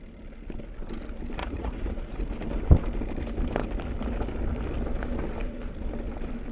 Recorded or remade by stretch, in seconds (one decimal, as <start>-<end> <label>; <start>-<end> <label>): 0.0-1.4 recorded; 1.4-2.2 remade; 2.2-6.5 recorded